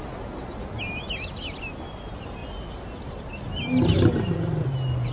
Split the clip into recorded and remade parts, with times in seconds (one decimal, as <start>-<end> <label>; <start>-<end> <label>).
0.0-5.1 recorded